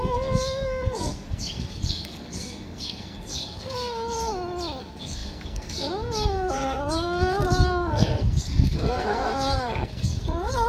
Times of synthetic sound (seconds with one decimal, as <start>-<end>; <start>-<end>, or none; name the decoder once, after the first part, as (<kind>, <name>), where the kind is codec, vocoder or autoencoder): 0.0-4.3 (codec, SNAC); 4.8-10.7